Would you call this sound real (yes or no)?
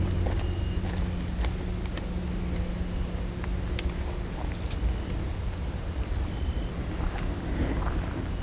yes